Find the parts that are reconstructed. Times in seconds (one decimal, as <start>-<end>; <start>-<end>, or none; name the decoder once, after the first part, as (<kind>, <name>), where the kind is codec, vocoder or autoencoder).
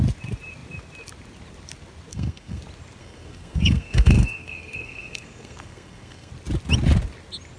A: 2.1-2.6 (codec, SNAC); 3.0-6.3